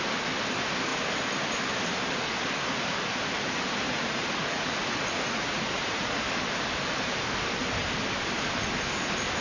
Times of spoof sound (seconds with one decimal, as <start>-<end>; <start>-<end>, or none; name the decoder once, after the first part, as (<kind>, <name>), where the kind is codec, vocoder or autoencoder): 3.9-6.2 (vocoder, Vocos)